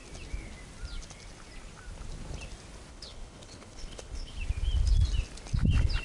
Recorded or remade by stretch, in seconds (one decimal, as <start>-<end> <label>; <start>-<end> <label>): 0.0-2.9 recorded; 2.9-4.3 remade; 4.3-6.0 recorded